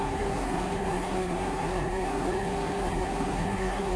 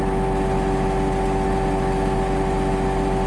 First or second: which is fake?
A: first